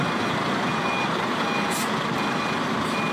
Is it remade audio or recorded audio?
recorded